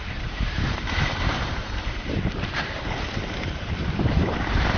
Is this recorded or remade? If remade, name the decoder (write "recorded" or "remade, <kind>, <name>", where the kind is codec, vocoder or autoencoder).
remade, vocoder, BigVGAN v2